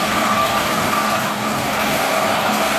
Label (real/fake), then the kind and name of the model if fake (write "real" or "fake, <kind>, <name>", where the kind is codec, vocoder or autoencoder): fake, codec, DAC